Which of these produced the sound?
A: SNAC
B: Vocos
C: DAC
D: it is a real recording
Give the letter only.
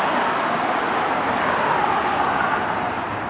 D